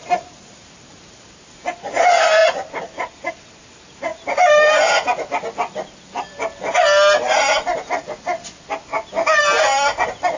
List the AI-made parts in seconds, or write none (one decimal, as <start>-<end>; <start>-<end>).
0.0-4.1; 9.4-10.4